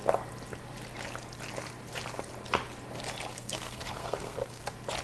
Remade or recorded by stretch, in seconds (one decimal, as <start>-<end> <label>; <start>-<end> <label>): 0.0-3.3 recorded; 3.3-4.6 remade; 4.6-5.0 recorded